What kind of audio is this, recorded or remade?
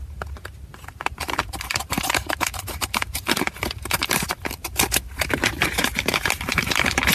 remade